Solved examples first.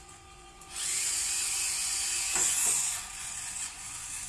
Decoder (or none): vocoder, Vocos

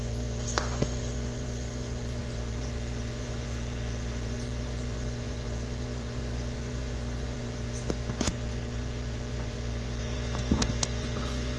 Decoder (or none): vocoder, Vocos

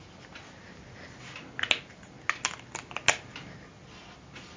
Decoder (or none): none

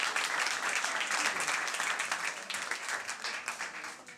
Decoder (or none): none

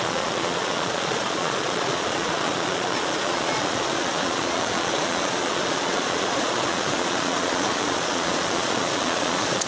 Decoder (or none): vocoder, Vocos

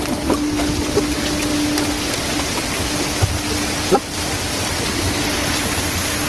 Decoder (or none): none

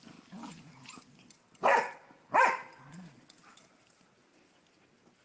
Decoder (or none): none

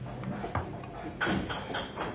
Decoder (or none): none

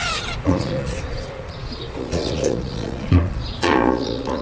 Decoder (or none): vocoder, Vocos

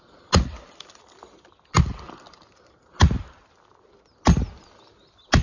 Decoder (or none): none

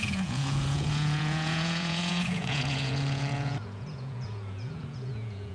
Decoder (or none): vocoder, Vocos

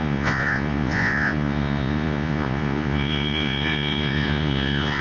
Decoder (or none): vocoder, Vocos